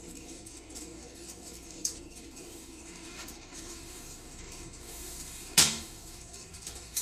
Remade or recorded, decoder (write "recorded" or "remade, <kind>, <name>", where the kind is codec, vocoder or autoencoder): remade, codec, DAC